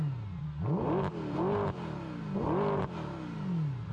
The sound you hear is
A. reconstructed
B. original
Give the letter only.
B